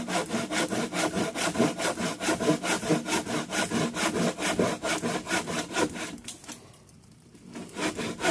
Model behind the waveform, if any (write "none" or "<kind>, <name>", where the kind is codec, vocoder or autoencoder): none